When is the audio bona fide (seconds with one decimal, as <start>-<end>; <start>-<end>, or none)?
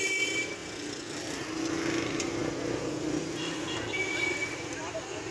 0.0-5.3